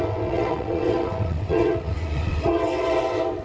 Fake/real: fake